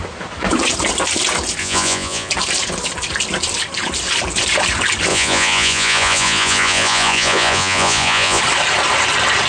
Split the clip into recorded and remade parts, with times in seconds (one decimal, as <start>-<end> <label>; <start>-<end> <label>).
0.0-1.6 recorded; 1.6-2.3 remade; 2.3-5.1 recorded; 5.1-8.4 remade; 8.4-9.5 recorded